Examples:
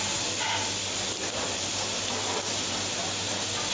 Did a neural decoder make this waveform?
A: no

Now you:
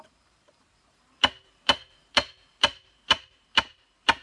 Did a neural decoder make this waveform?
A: yes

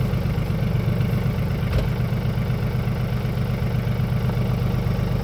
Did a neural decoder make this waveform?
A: no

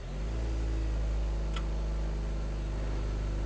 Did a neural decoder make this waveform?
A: no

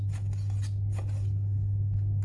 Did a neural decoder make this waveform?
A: no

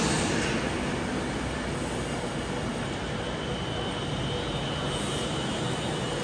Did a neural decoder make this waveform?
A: no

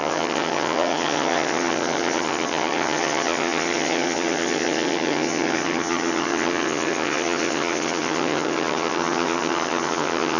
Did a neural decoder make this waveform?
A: yes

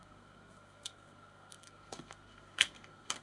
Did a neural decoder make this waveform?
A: yes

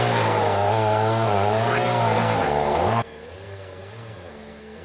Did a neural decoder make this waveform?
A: yes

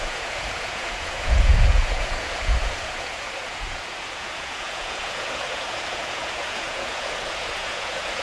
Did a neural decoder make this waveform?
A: yes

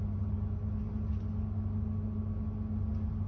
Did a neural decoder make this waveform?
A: no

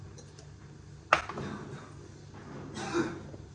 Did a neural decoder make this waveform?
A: no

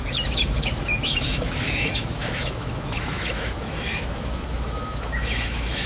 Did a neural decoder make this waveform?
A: yes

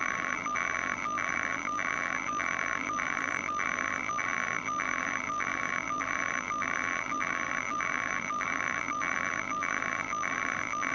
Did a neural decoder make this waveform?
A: yes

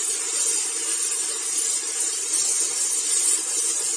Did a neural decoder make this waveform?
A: no